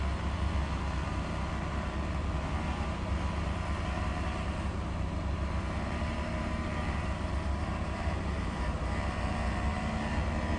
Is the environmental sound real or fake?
fake